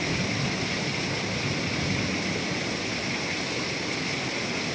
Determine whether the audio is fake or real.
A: real